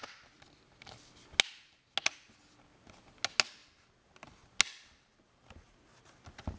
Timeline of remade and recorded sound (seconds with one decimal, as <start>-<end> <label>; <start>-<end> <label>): 0.0-6.6 recorded